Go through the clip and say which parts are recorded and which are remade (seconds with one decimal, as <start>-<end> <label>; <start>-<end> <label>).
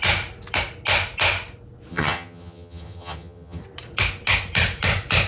0.0-1.9 recorded; 1.9-3.6 remade; 3.6-5.3 recorded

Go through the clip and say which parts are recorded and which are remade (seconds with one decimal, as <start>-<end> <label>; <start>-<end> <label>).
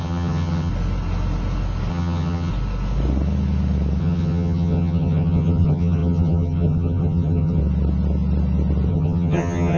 0.0-0.7 remade; 0.7-1.9 recorded; 1.9-2.5 remade; 2.5-4.0 recorded; 4.0-7.6 remade; 7.6-8.9 recorded; 8.9-9.8 remade